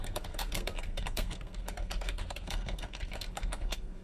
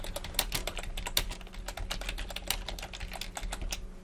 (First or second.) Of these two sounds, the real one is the second